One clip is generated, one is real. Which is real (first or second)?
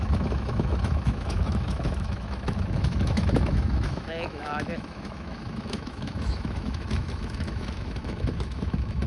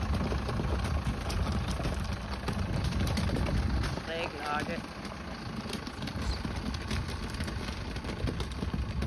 second